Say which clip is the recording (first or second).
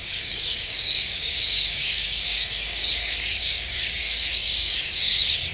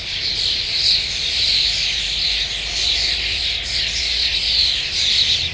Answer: second